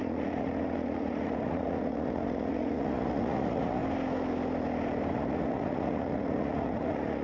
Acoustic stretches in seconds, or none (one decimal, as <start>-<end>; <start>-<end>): 3.8-5.1